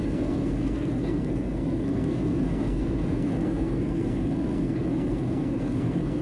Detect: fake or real fake